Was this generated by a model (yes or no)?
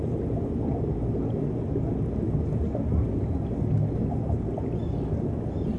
no